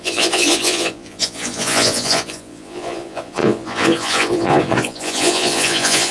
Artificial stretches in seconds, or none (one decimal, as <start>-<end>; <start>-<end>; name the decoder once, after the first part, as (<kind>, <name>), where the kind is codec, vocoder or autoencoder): 0.0-6.1 (vocoder, Vocos)